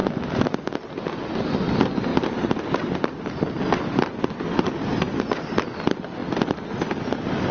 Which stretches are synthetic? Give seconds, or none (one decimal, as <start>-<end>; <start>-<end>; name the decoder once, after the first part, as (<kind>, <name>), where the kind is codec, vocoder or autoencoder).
none